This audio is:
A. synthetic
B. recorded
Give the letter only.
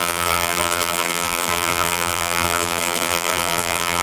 A